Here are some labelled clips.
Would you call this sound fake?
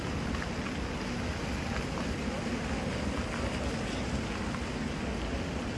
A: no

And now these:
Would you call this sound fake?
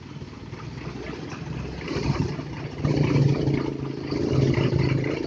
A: no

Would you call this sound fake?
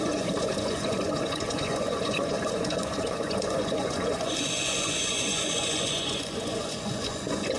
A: yes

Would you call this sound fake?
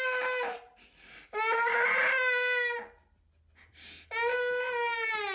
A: no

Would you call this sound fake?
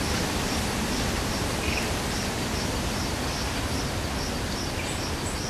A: no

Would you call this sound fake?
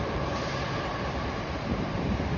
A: yes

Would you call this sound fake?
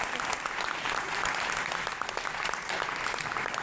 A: yes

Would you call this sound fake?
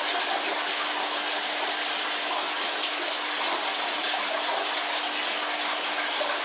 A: no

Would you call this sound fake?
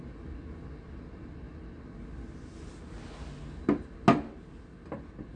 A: no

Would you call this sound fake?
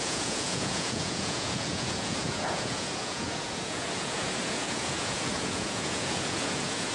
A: yes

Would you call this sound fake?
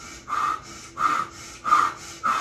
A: no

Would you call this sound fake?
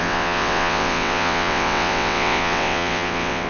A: yes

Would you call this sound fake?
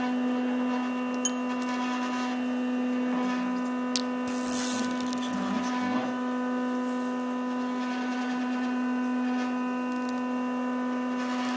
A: no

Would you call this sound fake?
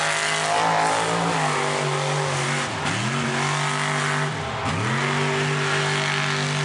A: no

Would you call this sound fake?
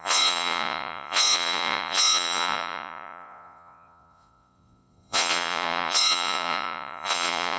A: yes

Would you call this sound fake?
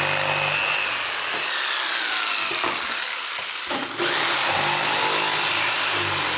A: no